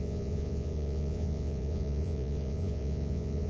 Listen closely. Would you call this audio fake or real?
fake